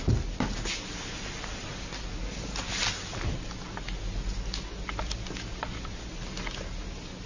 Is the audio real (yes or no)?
yes